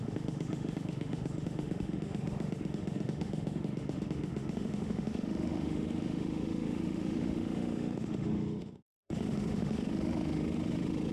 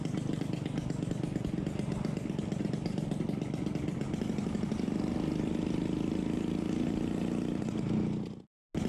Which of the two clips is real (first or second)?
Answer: second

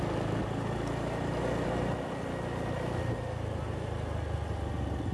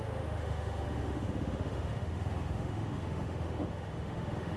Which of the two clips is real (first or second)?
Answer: first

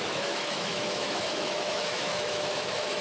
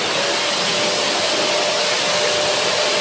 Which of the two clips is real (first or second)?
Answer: second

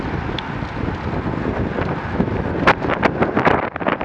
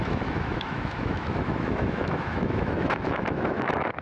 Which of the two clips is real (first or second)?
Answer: first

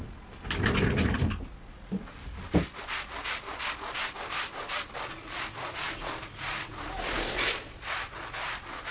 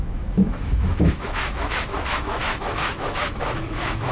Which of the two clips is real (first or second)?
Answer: first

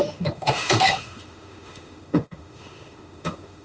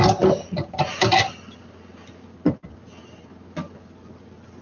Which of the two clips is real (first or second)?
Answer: second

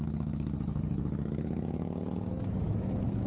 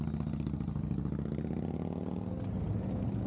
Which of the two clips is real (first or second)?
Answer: second